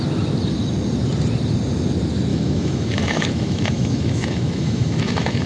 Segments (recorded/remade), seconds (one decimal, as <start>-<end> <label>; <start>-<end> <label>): 0.0-2.3 recorded; 2.3-5.5 remade